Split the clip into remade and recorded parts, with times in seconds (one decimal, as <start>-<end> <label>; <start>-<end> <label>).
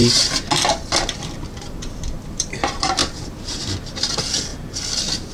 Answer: 0.0-1.2 recorded; 1.2-4.5 remade; 4.5-5.3 recorded